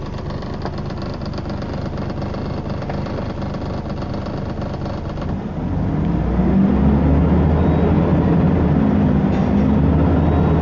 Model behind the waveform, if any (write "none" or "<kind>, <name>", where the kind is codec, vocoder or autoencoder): none